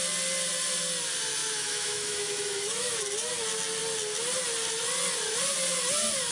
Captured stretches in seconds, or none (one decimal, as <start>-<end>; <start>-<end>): 0.0-1.4; 3.0-6.3